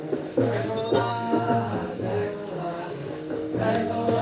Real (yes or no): no